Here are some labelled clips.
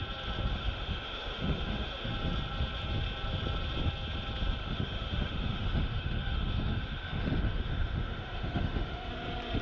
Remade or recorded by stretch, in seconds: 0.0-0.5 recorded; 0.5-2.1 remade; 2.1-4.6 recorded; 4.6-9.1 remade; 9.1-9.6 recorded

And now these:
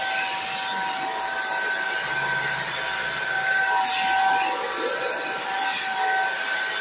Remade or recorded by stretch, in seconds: 0.0-6.8 recorded